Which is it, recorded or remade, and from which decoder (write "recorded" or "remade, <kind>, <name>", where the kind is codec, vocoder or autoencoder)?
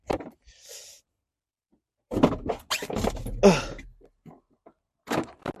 recorded